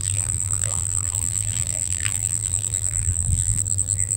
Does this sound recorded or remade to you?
remade